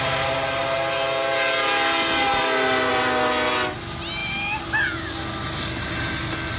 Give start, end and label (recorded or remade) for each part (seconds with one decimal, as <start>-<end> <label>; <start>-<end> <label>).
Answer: 0.0-6.6 recorded